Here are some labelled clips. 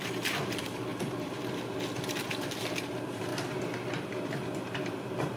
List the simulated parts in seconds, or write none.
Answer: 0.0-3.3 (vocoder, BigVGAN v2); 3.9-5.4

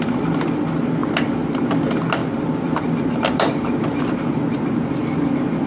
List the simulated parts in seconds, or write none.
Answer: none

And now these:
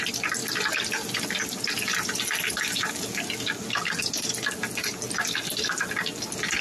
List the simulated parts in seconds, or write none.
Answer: none

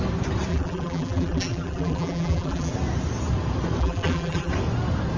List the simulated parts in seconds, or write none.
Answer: 0.5-2.7 (vocoder, BigVGAN v2); 3.8-4.5

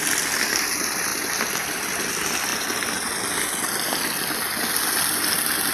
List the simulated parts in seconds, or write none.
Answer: 1.1-2.1 (vocoder, BigVGAN v2)

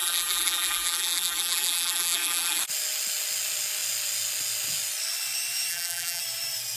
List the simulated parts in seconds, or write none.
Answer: 0.0-2.6 (vocoder, BigVGAN v2); 5.7-6.2